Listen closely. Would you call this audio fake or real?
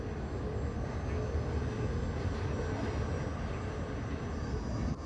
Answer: real